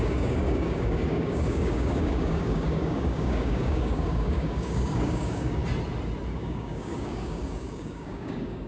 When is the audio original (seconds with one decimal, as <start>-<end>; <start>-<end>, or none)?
5.6-6.3